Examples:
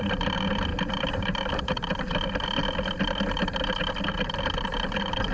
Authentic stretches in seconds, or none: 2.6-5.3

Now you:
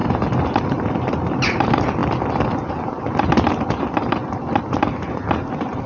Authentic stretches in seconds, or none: 0.0-5.9

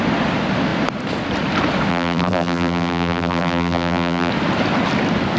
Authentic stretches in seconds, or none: 0.0-1.9; 4.3-5.4